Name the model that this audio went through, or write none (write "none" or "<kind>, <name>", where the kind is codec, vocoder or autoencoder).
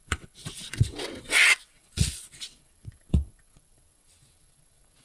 vocoder, WaveNeXt